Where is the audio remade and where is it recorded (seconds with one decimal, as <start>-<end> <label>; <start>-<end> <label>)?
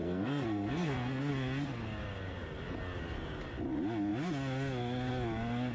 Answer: 0.0-1.3 remade; 1.3-5.7 recorded